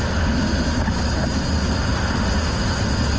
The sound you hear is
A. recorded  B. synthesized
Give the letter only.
A